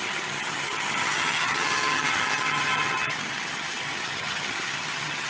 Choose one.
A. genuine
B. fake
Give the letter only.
B